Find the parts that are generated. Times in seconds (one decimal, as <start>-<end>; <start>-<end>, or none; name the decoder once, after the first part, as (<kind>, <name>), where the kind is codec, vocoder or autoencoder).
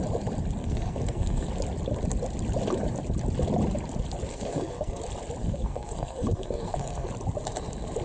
0.6-1.5 (codec, SNAC); 4.3-5.0; 5.4-7.1